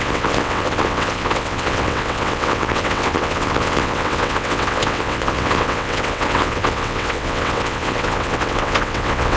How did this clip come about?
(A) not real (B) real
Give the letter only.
A